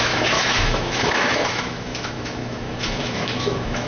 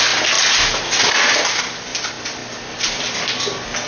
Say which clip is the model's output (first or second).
first